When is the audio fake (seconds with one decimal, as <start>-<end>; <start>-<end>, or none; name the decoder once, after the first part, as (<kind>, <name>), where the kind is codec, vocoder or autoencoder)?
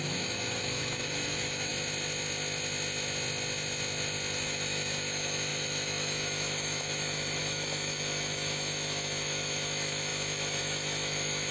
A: 0.0-1.7 (autoencoder, DAC-VAE); 4.4-11.5